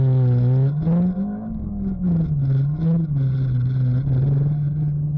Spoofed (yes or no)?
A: no